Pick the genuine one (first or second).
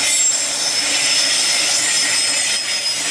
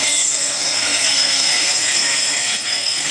first